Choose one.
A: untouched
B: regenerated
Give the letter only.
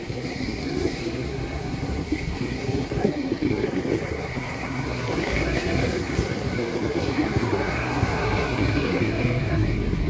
B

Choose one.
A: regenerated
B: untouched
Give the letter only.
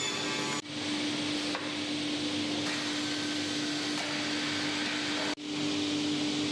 B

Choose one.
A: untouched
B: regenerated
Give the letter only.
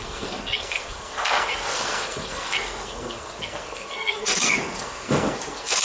B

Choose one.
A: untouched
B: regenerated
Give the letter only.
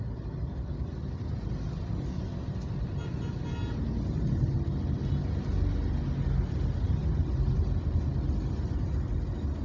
A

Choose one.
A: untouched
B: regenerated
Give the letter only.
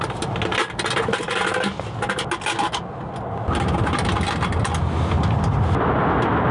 A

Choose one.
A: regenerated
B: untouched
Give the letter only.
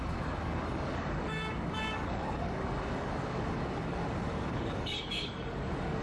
A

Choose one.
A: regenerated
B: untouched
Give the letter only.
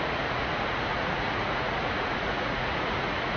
A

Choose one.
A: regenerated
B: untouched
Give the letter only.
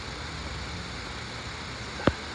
B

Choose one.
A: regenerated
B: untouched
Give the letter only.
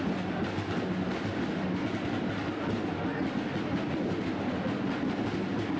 B